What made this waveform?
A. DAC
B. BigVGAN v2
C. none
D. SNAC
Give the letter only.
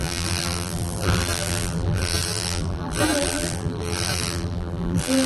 B